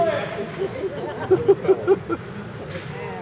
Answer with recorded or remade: recorded